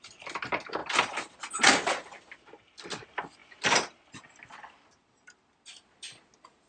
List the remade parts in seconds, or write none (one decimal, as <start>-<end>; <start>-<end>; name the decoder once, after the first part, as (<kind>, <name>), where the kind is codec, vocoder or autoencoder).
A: 0.8-1.5 (vocoder, BigVGAN v2); 3.4-4.6